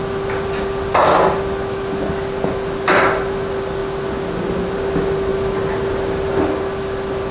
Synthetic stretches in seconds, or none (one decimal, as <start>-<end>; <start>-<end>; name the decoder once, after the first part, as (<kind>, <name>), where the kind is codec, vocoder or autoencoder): none